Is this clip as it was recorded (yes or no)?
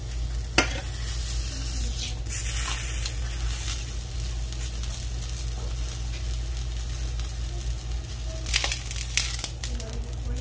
yes